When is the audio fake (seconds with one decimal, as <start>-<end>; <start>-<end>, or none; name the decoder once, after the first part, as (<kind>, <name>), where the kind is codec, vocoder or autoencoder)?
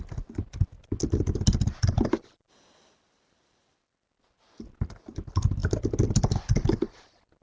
none